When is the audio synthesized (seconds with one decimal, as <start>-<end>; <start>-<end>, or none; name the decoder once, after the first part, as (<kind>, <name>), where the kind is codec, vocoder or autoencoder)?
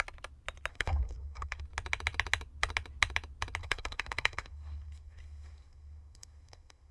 0.7-1.6 (codec, SNAC); 3.6-6.9